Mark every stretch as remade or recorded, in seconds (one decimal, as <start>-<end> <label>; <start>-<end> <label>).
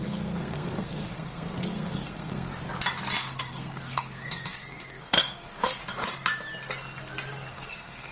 0.0-2.5 remade; 2.5-3.2 recorded; 3.2-5.8 remade; 5.8-7.5 recorded; 7.5-8.1 remade